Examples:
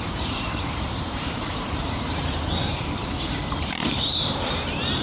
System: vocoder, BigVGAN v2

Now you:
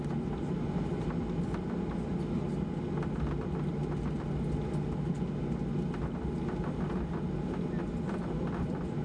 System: none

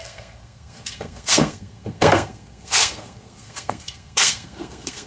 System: codec, SNAC